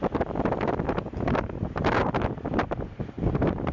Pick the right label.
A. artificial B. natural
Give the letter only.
B